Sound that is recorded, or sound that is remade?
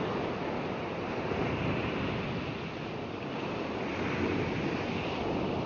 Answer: recorded